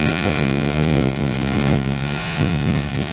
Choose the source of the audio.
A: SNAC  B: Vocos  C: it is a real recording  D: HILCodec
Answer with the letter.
B